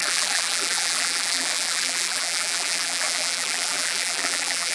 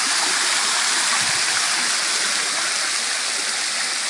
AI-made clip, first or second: first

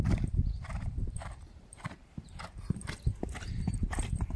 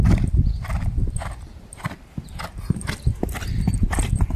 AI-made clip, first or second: first